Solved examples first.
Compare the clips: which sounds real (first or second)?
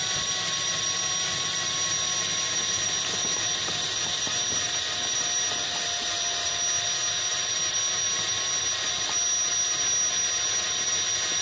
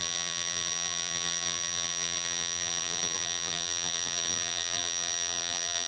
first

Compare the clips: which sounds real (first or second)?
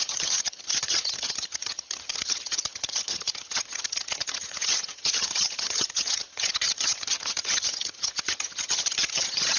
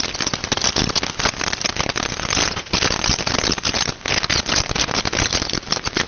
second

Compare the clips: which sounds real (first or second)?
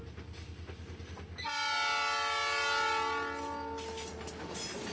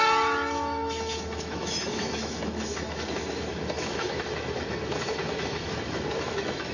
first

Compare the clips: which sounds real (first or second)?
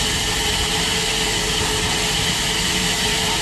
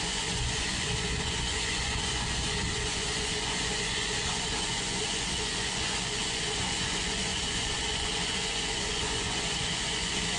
first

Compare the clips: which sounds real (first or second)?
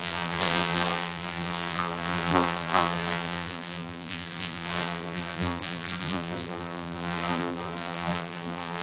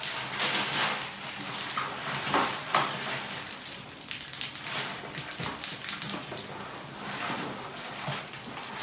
second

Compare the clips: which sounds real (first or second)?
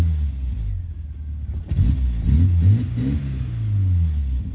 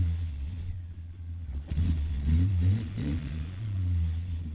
first